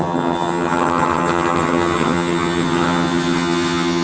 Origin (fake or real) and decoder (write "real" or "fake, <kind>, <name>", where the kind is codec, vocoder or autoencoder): fake, vocoder, HiFi-GAN